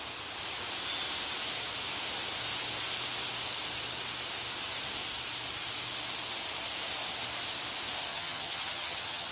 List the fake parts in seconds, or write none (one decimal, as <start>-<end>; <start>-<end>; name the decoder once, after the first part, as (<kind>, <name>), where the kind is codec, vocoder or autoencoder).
8.1-9.3 (vocoder, HiFi-GAN)